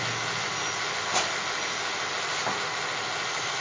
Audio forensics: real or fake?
real